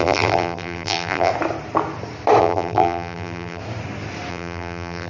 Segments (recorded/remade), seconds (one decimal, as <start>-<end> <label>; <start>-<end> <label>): 0.0-1.3 remade; 1.3-2.4 recorded; 2.4-3.6 remade; 3.6-4.3 recorded; 4.3-5.1 remade

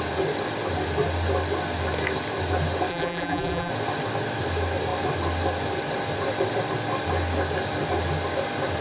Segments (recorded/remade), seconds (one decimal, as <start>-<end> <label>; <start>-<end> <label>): 0.0-2.9 recorded; 2.9-3.7 remade; 3.7-8.8 recorded

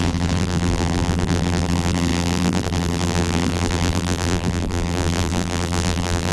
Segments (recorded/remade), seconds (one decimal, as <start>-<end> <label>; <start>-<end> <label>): 0.0-6.3 remade

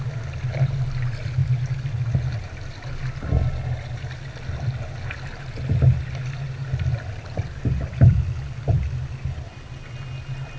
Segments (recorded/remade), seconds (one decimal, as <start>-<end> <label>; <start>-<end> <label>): 0.0-1.4 recorded; 1.4-2.1 remade; 2.1-10.6 recorded

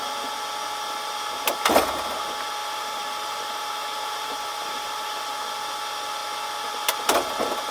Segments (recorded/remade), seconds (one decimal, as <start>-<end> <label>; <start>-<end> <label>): 0.0-2.6 recorded; 2.6-5.4 remade; 5.4-7.7 recorded